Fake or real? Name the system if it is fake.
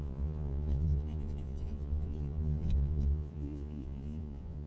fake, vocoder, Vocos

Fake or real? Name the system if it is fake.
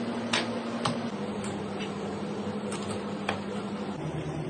real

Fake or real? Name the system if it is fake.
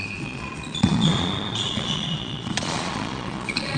fake, vocoder, Vocos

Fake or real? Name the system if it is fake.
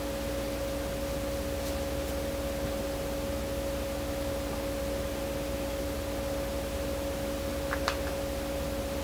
real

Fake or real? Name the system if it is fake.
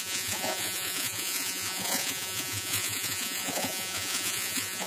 fake, vocoder, Vocos